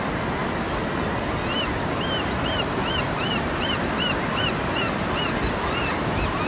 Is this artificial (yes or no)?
no